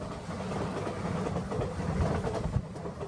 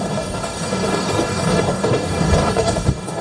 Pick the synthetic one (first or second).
second